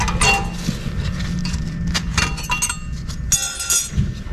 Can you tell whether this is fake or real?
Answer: real